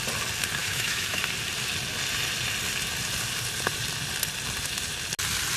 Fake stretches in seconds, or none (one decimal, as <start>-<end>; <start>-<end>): 0.6-1.2